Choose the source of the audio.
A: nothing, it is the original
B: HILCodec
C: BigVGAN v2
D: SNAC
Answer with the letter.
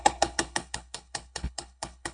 B